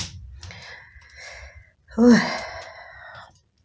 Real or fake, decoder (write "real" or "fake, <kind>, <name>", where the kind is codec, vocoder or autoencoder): real